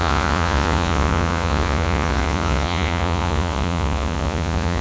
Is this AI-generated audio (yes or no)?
yes